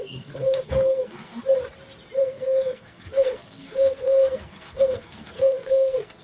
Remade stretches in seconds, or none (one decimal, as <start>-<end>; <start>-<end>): 0.0-1.4; 2.2-6.2